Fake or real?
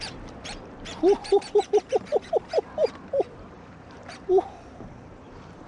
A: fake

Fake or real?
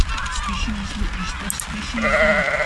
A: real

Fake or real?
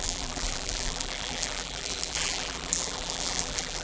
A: fake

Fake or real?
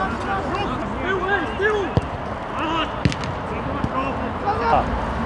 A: real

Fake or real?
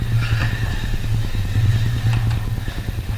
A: real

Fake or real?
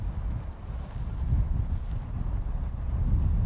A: real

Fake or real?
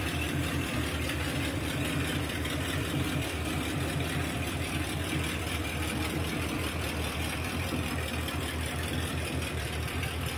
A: fake